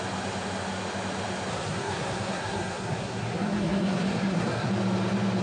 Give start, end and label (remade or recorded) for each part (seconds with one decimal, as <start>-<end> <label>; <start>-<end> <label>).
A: 0.0-1.5 recorded; 1.5-4.7 remade; 4.7-5.4 recorded